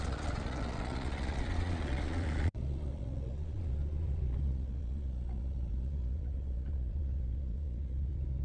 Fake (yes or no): yes